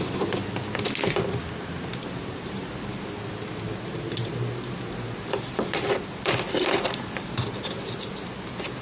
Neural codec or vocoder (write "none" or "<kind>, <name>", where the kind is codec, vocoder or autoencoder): none